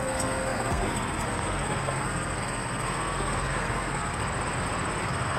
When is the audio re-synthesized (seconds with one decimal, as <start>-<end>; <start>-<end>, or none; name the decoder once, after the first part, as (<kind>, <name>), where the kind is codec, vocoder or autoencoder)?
0.0-4.2 (codec, SNAC); 5.0-5.4